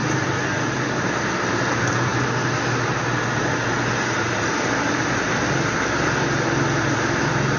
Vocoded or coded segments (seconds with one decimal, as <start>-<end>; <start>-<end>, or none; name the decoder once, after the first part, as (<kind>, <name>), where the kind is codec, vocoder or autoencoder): none